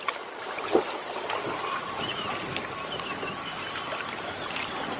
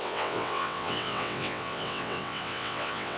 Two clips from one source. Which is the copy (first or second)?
second